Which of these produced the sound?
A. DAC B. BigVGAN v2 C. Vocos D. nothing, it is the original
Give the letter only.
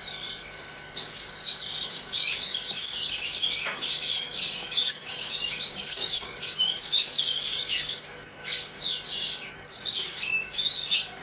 A